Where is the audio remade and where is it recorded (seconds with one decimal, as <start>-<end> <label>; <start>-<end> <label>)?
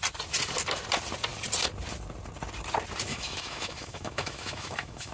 0.0-3.1 recorded; 3.1-5.1 remade